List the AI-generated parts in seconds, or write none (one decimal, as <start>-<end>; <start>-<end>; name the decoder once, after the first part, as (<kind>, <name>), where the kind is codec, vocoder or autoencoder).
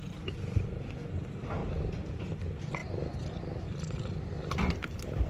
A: 1.6-2.4 (vocoder, BigVGAN v2); 2.8-4.7